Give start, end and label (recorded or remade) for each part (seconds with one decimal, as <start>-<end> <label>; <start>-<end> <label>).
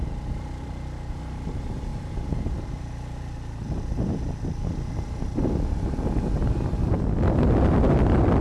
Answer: 0.0-8.4 recorded